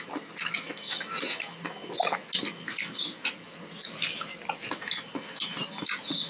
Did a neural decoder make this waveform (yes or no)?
no